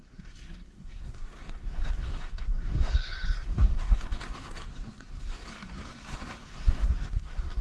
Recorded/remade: remade